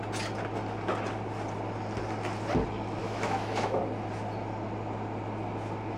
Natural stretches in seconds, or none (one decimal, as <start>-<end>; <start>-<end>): 0.0-3.0; 3.8-6.0